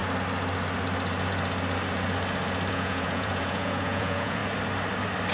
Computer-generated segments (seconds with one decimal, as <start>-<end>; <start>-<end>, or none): 2.7-4.4